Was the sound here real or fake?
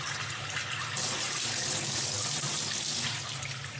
real